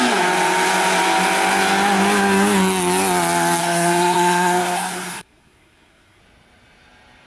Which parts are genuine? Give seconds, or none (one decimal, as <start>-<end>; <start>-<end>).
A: 0.0-3.6; 6.2-7.3